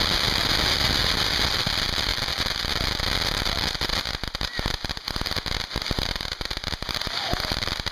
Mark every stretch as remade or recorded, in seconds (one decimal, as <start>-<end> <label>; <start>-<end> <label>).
0.0-7.9 recorded